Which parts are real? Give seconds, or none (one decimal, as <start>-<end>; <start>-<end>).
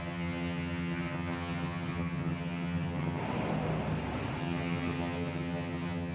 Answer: 3.2-4.4